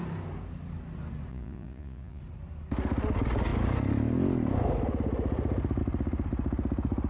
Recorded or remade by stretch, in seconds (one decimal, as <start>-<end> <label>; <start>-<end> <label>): 0.0-1.3 recorded; 1.3-2.2 remade; 2.2-7.1 recorded